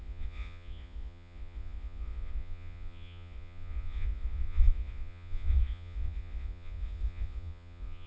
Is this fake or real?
fake